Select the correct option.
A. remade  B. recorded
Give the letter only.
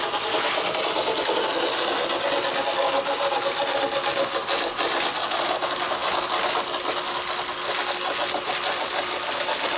B